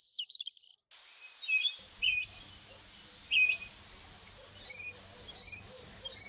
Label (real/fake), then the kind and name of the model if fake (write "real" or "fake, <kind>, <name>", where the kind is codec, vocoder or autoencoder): real